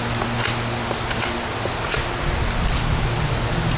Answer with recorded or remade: recorded